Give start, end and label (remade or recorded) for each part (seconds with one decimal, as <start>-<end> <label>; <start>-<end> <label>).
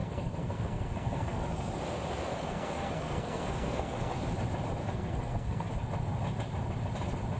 0.0-1.7 remade; 1.7-2.3 recorded; 2.3-4.2 remade; 4.2-4.8 recorded; 4.8-5.7 remade; 5.7-7.4 recorded